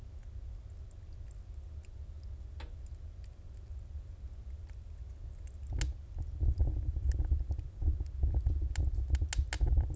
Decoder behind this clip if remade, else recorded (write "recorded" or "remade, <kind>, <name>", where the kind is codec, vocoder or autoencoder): recorded